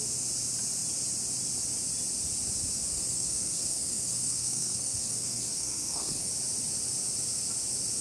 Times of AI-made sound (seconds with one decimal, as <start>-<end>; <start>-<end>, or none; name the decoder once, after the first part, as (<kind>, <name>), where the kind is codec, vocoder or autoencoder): 2.9-6.3 (codec, SNAC)